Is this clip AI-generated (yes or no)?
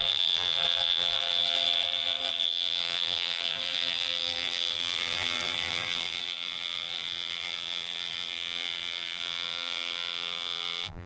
yes